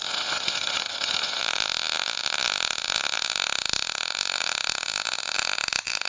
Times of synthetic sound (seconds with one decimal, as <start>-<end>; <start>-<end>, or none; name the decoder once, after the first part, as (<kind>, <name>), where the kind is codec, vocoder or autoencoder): 0.0-1.4 (vocoder, HiFi-GAN)